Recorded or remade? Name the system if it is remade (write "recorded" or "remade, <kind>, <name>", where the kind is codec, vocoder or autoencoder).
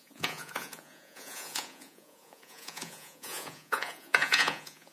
remade, vocoder, Vocos